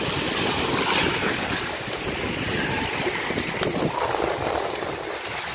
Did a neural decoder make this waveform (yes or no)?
no